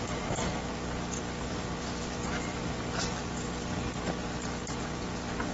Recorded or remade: recorded